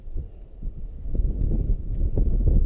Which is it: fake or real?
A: real